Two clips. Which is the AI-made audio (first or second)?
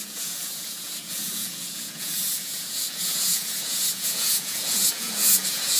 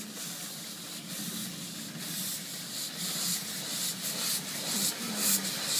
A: first